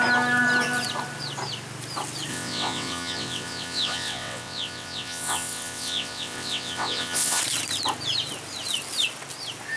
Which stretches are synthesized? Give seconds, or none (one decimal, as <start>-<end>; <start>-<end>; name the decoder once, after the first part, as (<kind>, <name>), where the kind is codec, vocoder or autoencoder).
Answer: 2.3-7.4 (vocoder, WaveNeXt)